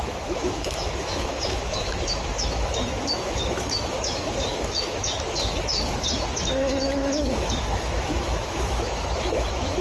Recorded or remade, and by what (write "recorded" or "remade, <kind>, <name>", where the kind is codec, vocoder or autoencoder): remade, autoencoder, DAC-VAE